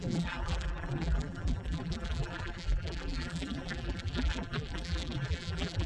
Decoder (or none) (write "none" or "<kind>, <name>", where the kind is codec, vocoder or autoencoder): vocoder, BigVGAN v2